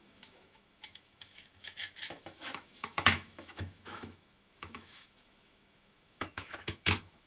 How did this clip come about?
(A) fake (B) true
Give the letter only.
A